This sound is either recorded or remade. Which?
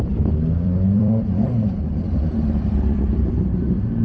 remade